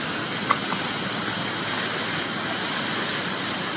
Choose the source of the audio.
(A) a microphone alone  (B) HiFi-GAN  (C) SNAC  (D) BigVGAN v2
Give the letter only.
A